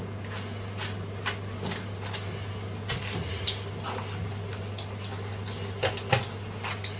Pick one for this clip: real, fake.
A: real